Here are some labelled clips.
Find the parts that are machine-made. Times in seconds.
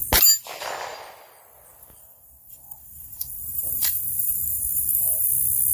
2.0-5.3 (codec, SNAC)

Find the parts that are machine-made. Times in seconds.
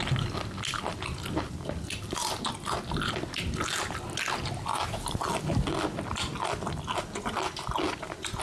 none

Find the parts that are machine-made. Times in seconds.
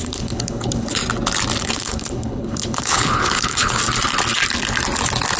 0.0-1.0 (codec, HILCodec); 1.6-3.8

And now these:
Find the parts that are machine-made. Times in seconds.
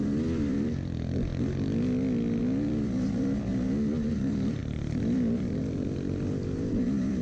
0.0-1.3 (vocoder, BigVGAN v2); 2.4-3.5; 4.1-7.2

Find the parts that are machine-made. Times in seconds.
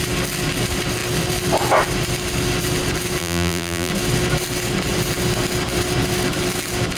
3.2-3.9 (vocoder, BigVGAN v2)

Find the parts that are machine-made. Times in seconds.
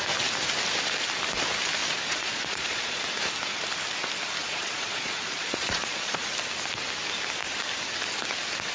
1.8-3.0 (vocoder, Vocos); 4.4-6.2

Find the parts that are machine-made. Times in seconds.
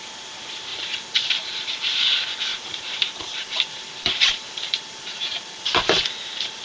0.7-1.7 (vocoder, BigVGAN v2); 2.5-6.6